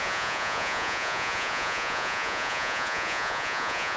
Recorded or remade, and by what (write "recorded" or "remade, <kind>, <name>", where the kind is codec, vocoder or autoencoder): remade, vocoder, Vocos